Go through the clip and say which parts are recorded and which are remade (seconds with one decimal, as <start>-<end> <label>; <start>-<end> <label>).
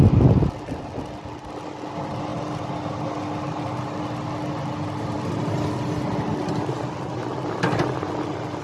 0.0-8.6 recorded